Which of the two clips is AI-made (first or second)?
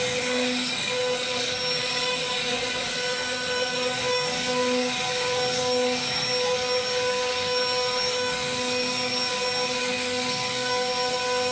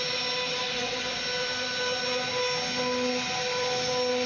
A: first